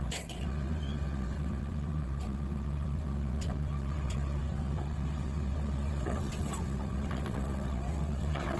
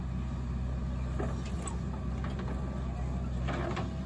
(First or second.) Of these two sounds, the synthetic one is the first